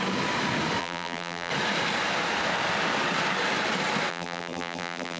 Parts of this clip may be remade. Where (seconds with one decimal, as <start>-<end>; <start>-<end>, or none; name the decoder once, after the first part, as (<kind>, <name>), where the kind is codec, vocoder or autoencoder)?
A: 0.8-1.5 (vocoder, BigVGAN v2); 4.1-5.2